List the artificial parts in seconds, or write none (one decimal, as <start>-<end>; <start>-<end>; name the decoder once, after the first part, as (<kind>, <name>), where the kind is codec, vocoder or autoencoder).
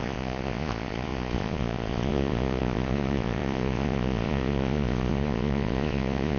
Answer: 0.0-6.4 (vocoder, Vocos)